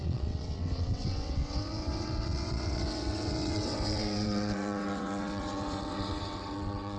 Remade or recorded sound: remade